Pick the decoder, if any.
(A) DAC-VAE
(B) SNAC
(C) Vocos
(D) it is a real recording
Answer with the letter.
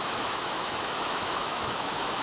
A